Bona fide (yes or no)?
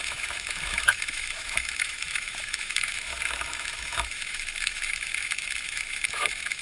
no